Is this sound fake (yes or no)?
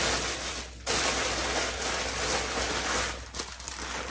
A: no